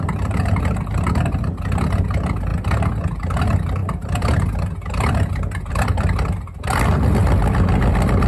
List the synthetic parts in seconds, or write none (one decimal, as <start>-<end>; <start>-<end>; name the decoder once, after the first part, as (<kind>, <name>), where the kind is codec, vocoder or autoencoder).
none